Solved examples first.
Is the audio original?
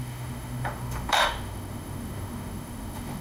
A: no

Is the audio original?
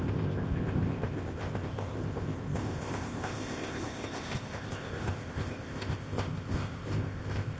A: no